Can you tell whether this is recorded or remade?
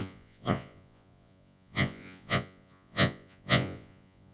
remade